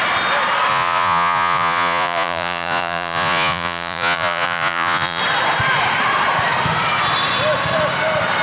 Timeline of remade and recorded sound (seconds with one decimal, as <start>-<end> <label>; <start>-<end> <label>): 0.0-0.7 recorded; 0.7-5.2 remade; 5.2-8.4 recorded